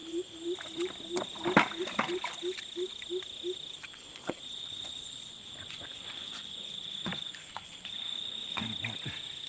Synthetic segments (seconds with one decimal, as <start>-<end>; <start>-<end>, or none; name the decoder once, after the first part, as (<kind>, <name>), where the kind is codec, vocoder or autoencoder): 3.9-8.6 (vocoder, Vocos)